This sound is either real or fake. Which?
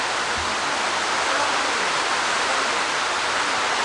real